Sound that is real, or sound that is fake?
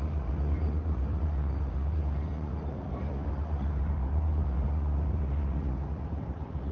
fake